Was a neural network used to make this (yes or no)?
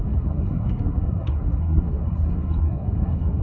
yes